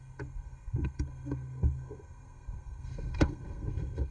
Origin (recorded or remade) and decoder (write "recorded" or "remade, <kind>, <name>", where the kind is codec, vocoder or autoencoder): remade, codec, SNAC